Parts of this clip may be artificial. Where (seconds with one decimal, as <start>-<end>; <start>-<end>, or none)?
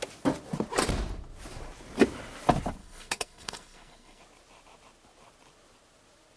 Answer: 2.8-4.2